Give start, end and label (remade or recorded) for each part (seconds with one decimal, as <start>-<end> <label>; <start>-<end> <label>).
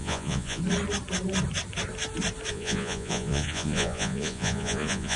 0.0-0.6 remade; 0.6-2.5 recorded; 2.5-5.2 remade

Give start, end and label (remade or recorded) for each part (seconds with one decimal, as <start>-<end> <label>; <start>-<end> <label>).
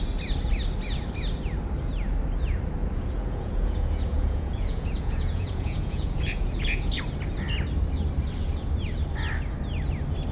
0.0-2.8 recorded; 2.8-7.0 remade; 7.0-10.3 recorded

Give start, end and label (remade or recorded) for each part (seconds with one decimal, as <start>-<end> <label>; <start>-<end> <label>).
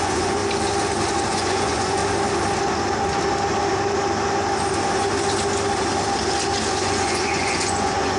0.0-0.4 remade; 0.4-1.3 recorded; 1.3-2.0 remade; 2.0-6.7 recorded; 6.7-8.2 remade